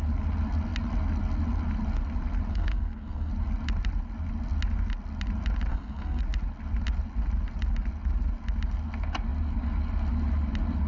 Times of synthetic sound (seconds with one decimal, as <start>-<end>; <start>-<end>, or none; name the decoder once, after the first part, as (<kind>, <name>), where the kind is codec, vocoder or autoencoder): 2.5-3.3 (codec, SNAC); 5.7-6.2